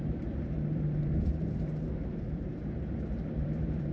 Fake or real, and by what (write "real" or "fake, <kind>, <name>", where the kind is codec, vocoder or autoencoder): fake, vocoder, BigVGAN v2